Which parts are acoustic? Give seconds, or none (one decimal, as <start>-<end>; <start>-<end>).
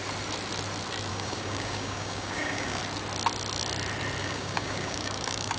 0.0-1.1; 2.8-4.2